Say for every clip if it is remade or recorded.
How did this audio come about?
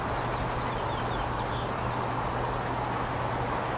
recorded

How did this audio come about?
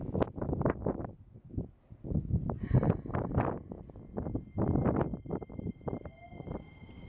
recorded